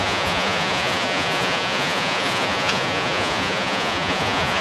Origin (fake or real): fake